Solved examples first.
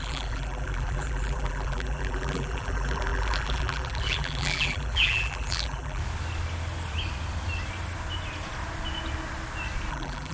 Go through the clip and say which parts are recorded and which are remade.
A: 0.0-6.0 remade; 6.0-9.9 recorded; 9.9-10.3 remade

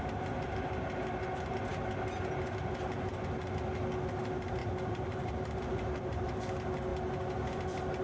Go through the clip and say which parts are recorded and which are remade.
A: 0.0-4.6 recorded; 4.6-6.3 remade; 6.3-8.0 recorded

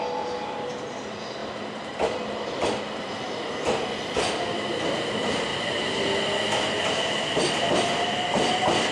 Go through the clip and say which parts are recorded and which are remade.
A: 0.0-1.4 recorded; 1.4-2.8 remade; 2.8-8.9 recorded

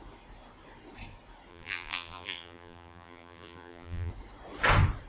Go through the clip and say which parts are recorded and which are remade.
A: 0.0-1.5 recorded; 1.5-4.1 remade; 4.1-5.1 recorded

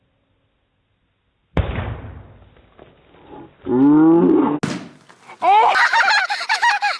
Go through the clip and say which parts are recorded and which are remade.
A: 0.0-1.4 recorded; 1.4-1.9 remade; 1.9-7.0 recorded

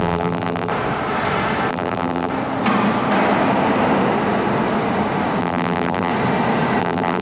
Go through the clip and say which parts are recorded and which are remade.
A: 0.0-0.7 remade; 0.7-1.7 recorded; 1.7-2.3 remade; 2.3-5.4 recorded; 5.4-6.1 remade; 6.1-6.8 recorded; 6.8-7.2 remade